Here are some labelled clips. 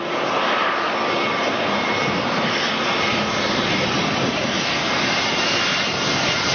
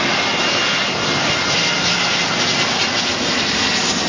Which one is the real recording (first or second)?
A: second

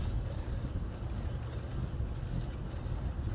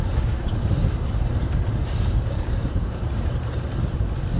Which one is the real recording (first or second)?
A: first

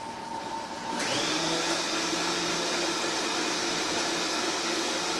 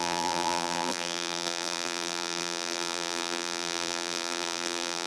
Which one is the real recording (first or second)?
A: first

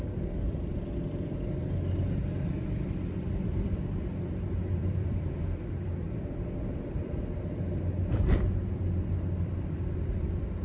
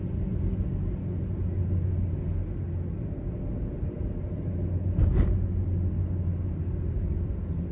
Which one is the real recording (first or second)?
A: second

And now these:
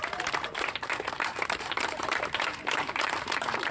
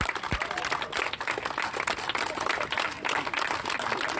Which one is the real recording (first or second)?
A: second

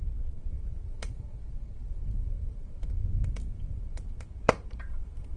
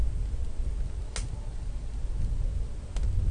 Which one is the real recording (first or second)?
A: second